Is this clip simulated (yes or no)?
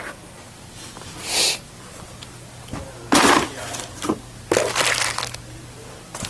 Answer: no